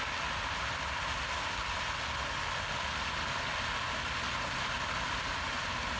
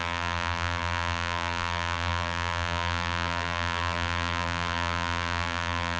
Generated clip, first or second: second